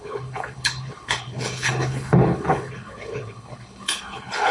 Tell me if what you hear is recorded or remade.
remade